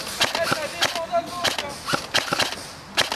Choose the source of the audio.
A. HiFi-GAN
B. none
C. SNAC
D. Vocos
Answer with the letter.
B